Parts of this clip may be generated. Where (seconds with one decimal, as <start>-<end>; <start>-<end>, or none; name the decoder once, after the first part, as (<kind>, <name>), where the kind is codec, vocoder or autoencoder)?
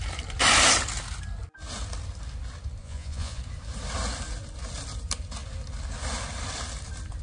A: 2.8-3.4 (vocoder, Vocos)